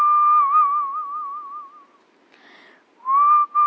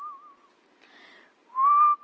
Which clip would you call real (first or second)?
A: first